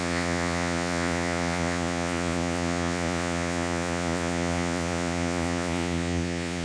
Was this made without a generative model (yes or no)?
no